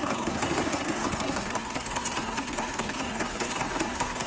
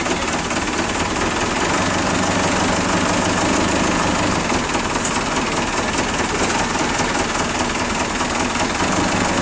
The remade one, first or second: first